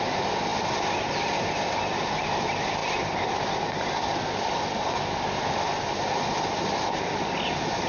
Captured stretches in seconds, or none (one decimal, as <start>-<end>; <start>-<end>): 0.5-2.4; 2.8-3.9